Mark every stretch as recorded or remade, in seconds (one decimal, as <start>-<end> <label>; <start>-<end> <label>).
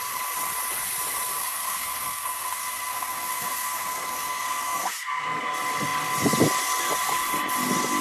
0.0-1.4 recorded; 1.4-5.5 remade; 5.5-8.0 recorded